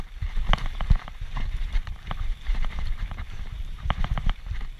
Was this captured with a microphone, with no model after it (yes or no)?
no